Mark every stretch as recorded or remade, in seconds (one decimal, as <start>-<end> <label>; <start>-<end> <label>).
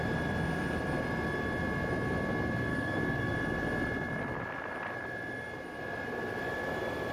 0.0-2.7 recorded; 2.7-3.3 remade; 3.3-7.1 recorded